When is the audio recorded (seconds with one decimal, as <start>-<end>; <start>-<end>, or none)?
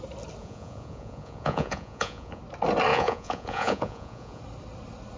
0.0-0.4; 2.4-2.9; 4.4-5.2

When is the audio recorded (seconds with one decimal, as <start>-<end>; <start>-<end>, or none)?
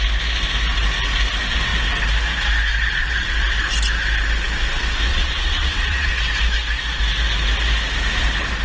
0.0-5.1; 6.1-8.6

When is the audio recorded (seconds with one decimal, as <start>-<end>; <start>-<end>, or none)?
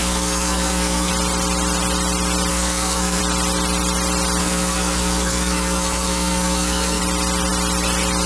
1.1-2.5; 3.2-4.4; 7.0-8.3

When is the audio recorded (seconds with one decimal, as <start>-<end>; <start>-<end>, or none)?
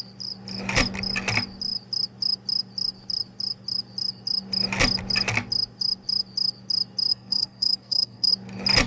0.0-7.1; 8.3-8.9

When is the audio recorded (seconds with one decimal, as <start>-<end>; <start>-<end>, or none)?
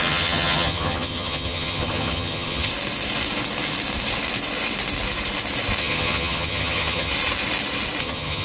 2.7-5.8; 7.1-8.0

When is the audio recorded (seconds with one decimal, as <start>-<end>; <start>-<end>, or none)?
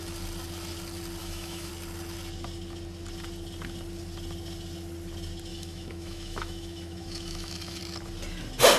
0.0-1.2; 1.7-5.5; 7.8-8.8